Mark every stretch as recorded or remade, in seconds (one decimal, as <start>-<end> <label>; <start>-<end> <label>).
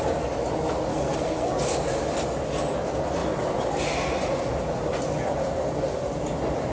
0.0-0.9 recorded; 0.9-1.5 remade; 1.5-6.7 recorded